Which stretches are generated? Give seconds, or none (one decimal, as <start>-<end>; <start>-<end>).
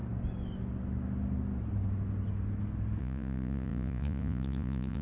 3.0-5.0